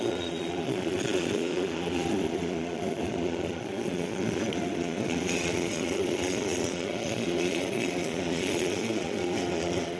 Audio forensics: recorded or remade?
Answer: remade